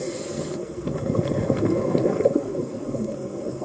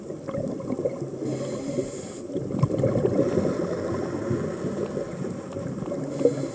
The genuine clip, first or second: second